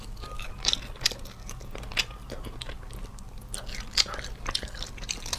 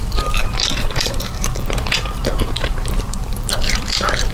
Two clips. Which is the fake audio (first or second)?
second